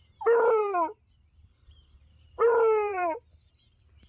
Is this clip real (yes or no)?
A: no